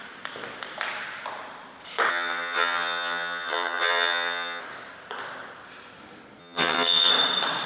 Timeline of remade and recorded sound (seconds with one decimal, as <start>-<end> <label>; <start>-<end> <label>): 0.0-2.1 recorded; 2.1-4.6 remade; 4.6-6.4 recorded; 6.4-7.1 remade; 7.1-7.7 recorded